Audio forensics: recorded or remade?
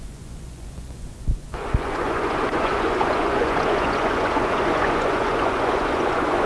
remade